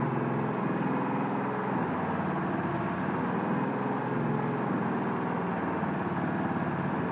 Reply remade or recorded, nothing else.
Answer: recorded